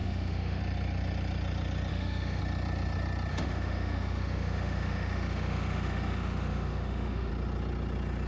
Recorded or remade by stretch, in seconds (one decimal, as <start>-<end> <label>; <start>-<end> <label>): 0.0-0.6 remade; 0.6-1.9 recorded; 1.9-2.4 remade; 2.4-3.3 recorded; 3.3-7.3 remade; 7.3-8.3 recorded

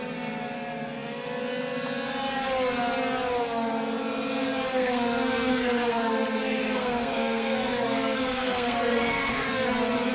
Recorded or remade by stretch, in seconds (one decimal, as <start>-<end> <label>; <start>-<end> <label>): 0.0-4.7 recorded; 4.7-9.7 remade; 9.7-10.1 recorded

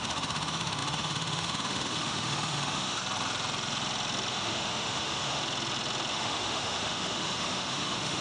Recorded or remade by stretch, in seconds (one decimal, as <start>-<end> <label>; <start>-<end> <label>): 0.0-3.0 remade; 3.0-4.3 recorded; 4.3-5.4 remade; 5.4-6.1 recorded; 6.1-8.2 remade

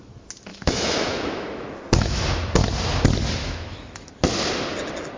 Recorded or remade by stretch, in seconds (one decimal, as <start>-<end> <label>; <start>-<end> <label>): 0.0-0.5 recorded; 0.5-2.2 remade; 2.2-3.4 recorded; 3.4-4.1 remade; 4.1-5.2 recorded

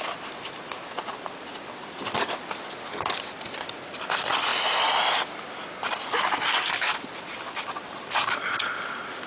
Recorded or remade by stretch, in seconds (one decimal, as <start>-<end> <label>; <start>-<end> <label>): 0.0-4.5 remade; 4.5-6.0 recorded; 6.0-9.3 remade

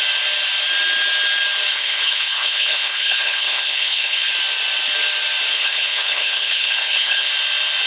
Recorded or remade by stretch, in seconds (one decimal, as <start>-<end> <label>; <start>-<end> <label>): 0.0-1.7 recorded; 1.7-4.3 remade; 4.3-5.5 recorded; 5.5-7.3 remade; 7.3-7.9 recorded